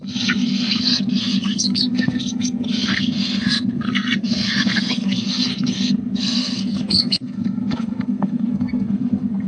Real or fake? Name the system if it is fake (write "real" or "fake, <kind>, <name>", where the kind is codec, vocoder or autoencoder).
fake, codec, SNAC